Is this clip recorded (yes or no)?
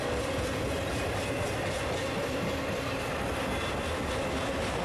yes